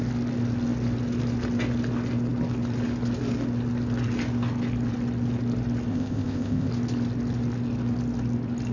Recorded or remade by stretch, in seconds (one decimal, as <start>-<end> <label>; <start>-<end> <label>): 0.0-5.9 recorded; 5.9-6.7 remade; 6.7-8.7 recorded

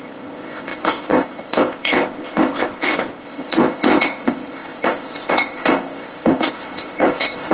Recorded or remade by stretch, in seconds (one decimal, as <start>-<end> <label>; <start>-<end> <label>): 0.0-7.5 remade

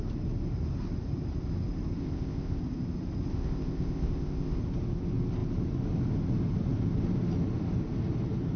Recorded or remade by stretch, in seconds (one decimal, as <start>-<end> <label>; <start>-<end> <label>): 0.0-2.0 recorded; 2.0-2.6 remade; 2.6-3.3 recorded; 3.3-4.6 remade; 4.6-8.6 recorded

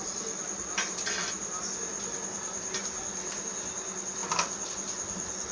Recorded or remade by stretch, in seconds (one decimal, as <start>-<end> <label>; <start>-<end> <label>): 0.0-5.5 recorded

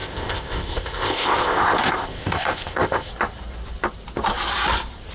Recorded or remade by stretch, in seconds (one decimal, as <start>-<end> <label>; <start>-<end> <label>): 0.0-3.1 remade; 3.1-5.1 recorded